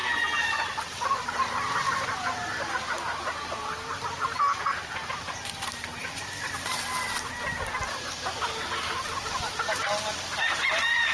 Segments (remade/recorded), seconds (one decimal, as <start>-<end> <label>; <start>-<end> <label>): 0.0-6.0 recorded; 6.0-6.7 remade; 6.7-11.1 recorded